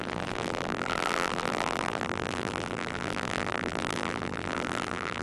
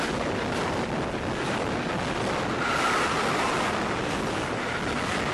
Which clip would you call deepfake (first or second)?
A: first